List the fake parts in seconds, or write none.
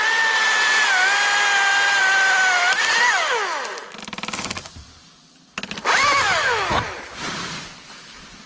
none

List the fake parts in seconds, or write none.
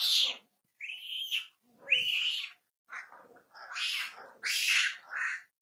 none